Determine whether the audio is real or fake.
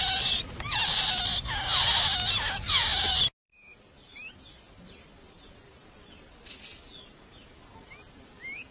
real